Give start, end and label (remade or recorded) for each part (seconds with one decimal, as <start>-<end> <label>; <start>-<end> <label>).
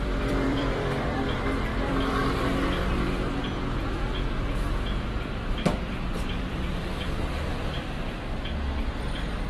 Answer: 0.0-2.2 remade; 2.2-3.9 recorded; 3.9-9.5 remade